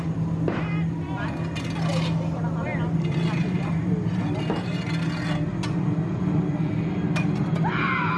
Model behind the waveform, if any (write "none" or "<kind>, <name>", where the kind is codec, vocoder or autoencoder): none